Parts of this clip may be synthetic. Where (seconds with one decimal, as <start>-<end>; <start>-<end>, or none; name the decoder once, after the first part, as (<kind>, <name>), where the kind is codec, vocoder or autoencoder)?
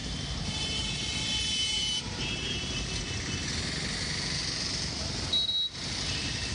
0.0-3.0 (vocoder, BigVGAN v2)